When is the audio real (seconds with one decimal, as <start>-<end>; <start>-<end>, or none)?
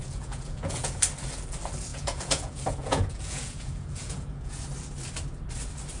1.0-1.9; 4.6-6.0